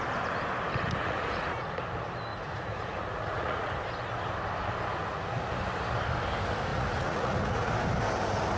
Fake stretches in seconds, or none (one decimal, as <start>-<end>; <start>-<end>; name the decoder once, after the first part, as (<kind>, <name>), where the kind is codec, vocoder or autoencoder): 1.0-1.8 (vocoder, Vocos); 2.3-3.7; 4.9-5.5; 6.7-7.7